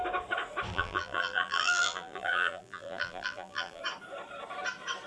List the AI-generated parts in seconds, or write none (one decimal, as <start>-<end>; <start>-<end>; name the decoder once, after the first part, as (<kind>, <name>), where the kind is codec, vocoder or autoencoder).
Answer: 0.7-3.8 (vocoder, BigVGAN v2)